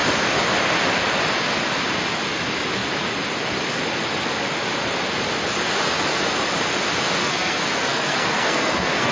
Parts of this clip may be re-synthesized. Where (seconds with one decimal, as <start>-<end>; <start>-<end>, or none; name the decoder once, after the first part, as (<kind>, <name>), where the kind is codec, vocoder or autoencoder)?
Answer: 7.2-9.1 (codec, SNAC)